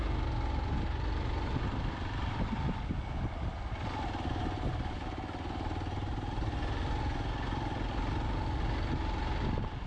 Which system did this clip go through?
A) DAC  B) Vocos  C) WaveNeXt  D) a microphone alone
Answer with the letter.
D